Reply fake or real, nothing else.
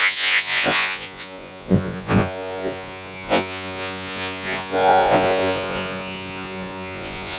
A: fake